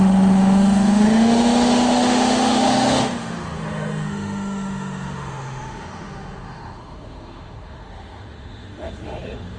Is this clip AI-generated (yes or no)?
yes